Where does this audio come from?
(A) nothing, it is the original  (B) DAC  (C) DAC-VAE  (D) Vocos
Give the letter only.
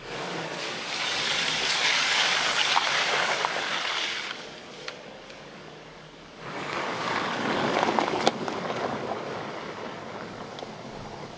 B